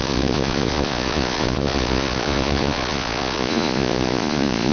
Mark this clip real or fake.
fake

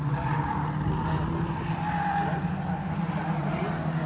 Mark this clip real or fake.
real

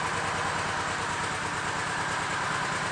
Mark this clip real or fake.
fake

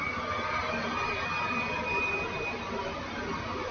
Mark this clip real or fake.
real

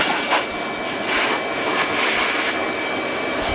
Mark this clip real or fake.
real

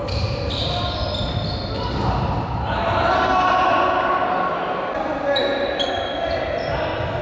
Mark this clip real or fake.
real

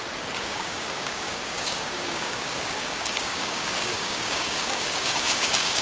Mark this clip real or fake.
fake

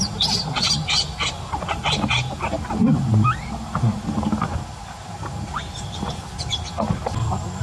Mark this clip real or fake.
real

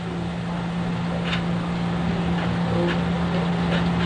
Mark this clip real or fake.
real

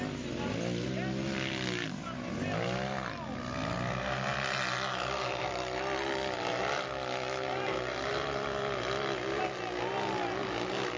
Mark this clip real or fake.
real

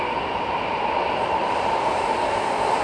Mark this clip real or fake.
fake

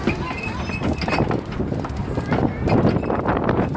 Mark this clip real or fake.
real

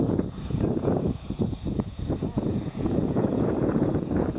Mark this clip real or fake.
fake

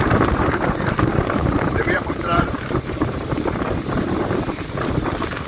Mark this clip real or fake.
fake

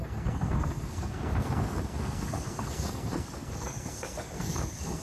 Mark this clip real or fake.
fake